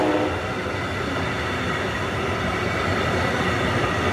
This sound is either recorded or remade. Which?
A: recorded